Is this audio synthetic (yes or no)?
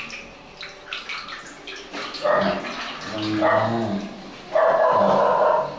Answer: no